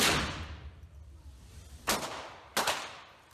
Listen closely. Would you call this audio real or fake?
real